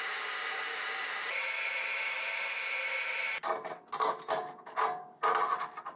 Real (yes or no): yes